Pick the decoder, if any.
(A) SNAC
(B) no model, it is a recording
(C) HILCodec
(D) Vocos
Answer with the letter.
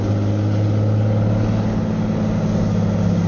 B